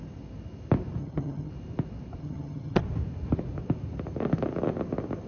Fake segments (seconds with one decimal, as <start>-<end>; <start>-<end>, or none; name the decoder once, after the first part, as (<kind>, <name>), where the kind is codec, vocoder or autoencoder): 1.0-1.5 (vocoder, HiFi-GAN); 2.2-2.8